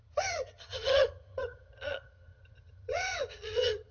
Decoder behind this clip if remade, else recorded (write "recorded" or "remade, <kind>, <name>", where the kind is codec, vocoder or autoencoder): remade, vocoder, HiFi-GAN